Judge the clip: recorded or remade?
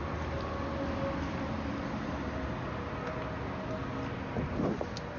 recorded